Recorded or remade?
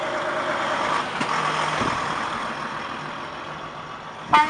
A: recorded